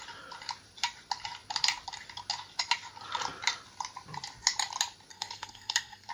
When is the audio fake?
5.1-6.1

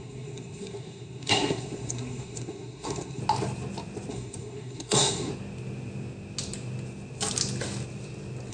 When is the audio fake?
0.0-3.2; 4.1-5.3